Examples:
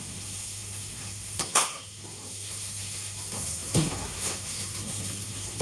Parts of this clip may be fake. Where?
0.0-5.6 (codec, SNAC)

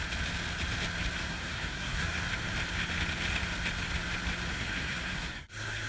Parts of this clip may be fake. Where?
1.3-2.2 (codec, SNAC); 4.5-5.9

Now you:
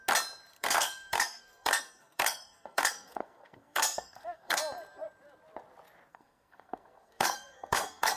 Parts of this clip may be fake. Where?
0.5-4.6 (codec, SNAC); 6.1-8.2